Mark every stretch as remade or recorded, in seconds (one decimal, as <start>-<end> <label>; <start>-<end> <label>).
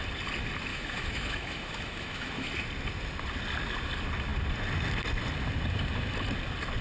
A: 0.0-0.7 recorded; 0.7-2.5 remade; 2.5-6.8 recorded